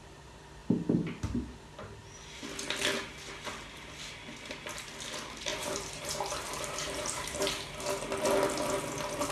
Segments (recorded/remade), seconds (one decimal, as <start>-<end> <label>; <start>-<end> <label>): 0.0-3.5 recorded; 3.5-4.0 remade; 4.0-5.5 recorded; 5.5-7.9 remade; 7.9-9.3 recorded